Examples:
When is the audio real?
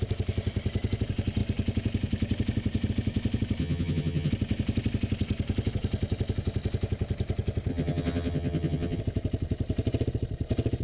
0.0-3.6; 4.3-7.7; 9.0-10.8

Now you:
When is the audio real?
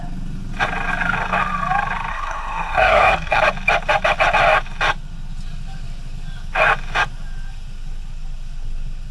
0.0-2.1; 3.4-9.1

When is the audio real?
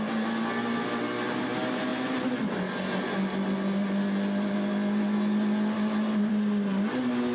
0.0-7.3